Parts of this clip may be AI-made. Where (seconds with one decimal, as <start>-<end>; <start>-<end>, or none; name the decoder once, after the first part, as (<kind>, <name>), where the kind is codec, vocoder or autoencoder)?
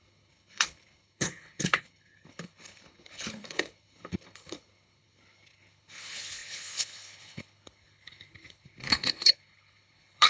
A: 0.0-10.3 (codec, HILCodec)